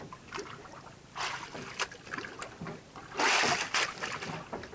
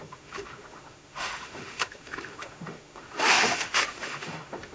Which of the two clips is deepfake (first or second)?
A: second